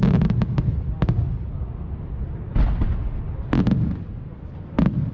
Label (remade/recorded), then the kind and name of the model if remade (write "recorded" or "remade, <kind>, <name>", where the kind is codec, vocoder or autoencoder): recorded